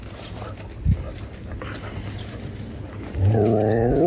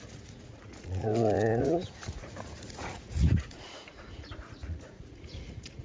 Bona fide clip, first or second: first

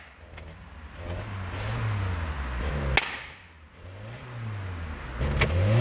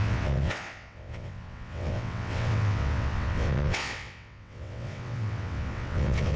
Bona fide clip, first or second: first